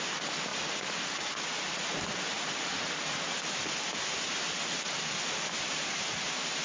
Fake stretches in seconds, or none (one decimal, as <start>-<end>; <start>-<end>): none